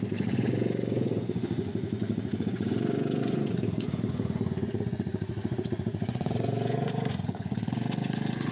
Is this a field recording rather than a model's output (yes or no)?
no